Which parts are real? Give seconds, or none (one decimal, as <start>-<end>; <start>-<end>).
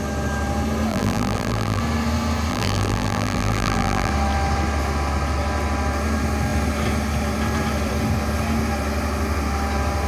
0.0-0.9; 1.8-2.5; 4.1-10.1